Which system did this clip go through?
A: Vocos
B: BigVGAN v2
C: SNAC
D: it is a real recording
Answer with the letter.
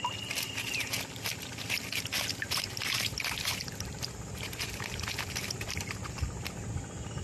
D